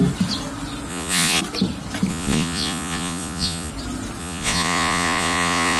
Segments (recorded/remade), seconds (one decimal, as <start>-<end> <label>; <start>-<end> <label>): 0.0-0.9 recorded; 0.9-1.4 remade; 1.4-2.1 recorded; 2.1-3.7 remade; 3.7-4.2 recorded; 4.2-5.8 remade